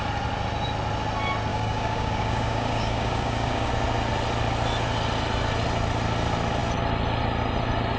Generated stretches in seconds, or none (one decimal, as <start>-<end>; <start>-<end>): 1.5-3.7